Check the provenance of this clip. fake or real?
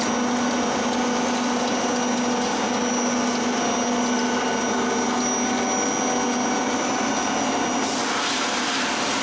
real